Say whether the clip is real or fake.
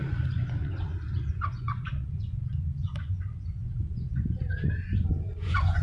fake